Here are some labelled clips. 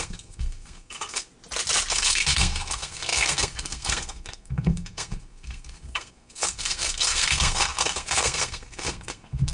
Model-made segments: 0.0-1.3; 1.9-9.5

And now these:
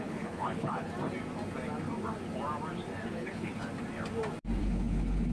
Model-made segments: 0.0-0.9; 3.1-3.5; 4.6-5.3

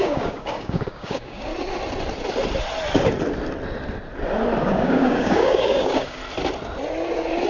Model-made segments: 0.0-1.5; 4.6-6.2

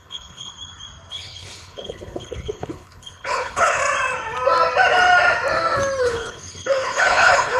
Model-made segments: 0.0-0.5; 1.1-3.8; 6.0-7.6

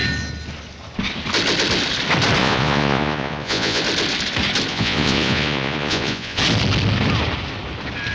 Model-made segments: 2.4-3.8; 4.7-6.4

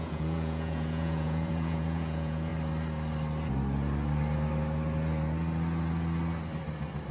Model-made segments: 0.0-2.5

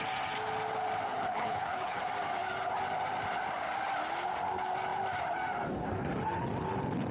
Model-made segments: 1.1-2.0